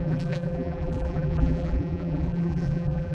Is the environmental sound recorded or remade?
remade